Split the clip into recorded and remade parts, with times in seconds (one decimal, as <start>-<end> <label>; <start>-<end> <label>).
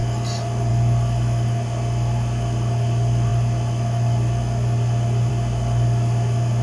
0.0-6.6 recorded